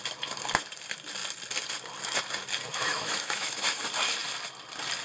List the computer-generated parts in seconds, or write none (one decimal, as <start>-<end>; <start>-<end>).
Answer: 2.7-3.8